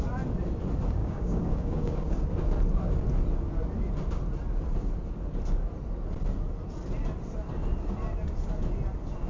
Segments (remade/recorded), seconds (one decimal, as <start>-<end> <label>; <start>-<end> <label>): 0.0-1.0 recorded; 1.0-2.2 remade; 2.2-9.3 recorded